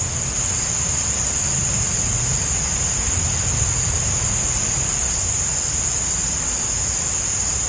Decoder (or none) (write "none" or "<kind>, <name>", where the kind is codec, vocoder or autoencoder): none